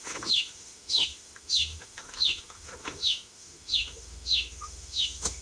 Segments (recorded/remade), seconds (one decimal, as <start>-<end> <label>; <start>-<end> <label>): 0.0-5.4 remade